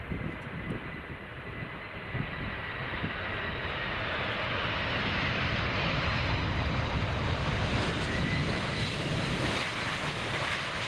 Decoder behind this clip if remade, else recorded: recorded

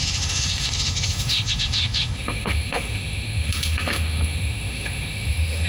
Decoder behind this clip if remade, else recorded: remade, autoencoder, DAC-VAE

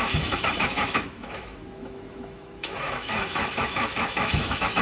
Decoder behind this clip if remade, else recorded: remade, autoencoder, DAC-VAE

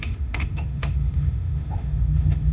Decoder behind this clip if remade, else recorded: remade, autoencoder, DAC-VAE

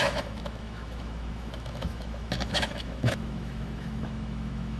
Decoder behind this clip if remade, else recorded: remade, autoencoder, DAC-VAE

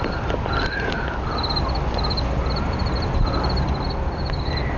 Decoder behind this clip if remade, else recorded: recorded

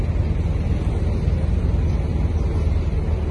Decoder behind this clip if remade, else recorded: recorded